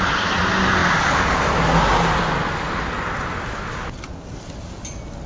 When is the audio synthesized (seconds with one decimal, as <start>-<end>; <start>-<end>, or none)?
none